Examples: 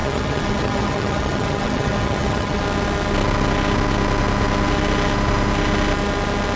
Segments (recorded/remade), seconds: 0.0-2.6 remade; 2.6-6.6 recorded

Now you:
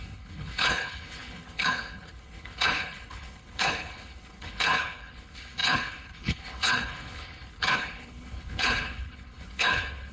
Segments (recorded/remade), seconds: 0.0-10.1 remade

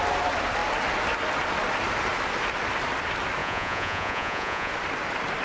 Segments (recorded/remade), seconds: 0.0-3.4 recorded; 3.4-4.7 remade; 4.7-5.4 recorded

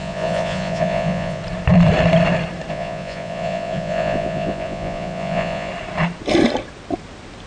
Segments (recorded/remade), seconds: 0.0-1.4 remade; 1.4-2.7 recorded; 2.7-5.7 remade; 5.7-7.5 recorded

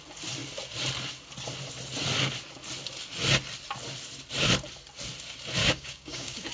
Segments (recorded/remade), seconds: 0.0-5.6 recorded; 5.6-6.5 remade

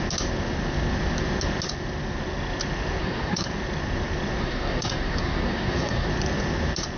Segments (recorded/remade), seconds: 0.0-3.0 recorded; 3.0-3.5 remade; 3.5-4.4 recorded; 4.4-6.1 remade; 6.1-7.0 recorded

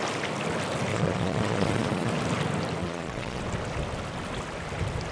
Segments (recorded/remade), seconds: 0.0-0.9 recorded; 0.9-2.1 remade; 2.1-2.8 recorded; 2.8-3.4 remade; 3.4-5.1 recorded

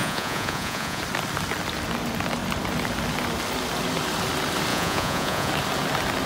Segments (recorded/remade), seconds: 0.0-1.0 remade; 1.0-4.7 recorded; 4.7-5.5 remade; 5.5-6.3 recorded